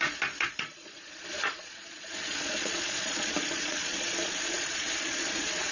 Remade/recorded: remade